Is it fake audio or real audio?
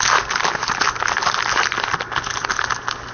real